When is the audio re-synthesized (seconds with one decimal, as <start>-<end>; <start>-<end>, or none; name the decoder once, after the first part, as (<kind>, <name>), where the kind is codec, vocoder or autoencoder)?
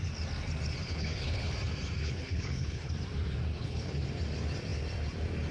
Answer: 0.8-1.5 (codec, HILCodec); 2.0-2.9; 3.5-4.0